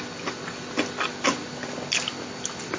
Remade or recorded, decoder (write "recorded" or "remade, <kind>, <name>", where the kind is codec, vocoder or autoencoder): recorded